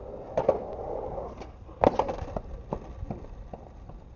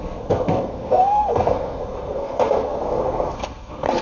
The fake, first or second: second